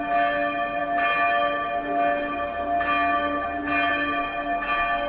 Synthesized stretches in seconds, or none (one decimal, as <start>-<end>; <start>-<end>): none